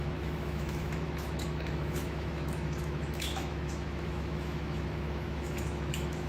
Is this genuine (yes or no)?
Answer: no